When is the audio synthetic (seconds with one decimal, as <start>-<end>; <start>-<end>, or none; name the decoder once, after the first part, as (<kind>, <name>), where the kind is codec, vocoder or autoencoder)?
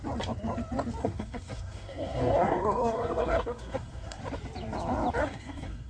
1.0-4.2 (codec, SNAC); 5.2-5.9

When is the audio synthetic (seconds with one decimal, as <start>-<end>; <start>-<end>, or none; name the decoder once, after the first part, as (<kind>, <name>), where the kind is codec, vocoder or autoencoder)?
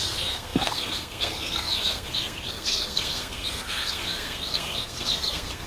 0.0-5.7 (codec, SNAC)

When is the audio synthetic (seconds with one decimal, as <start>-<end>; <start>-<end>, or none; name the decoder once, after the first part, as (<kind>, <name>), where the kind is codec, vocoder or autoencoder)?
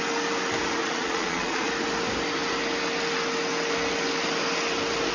0.8-1.7 (vocoder, Vocos)